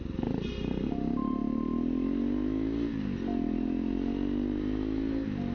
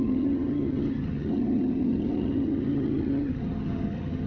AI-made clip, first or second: second